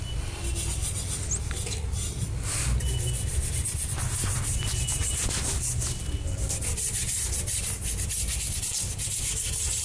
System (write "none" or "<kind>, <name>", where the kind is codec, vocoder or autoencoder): none